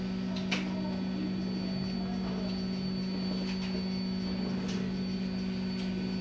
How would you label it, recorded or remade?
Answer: recorded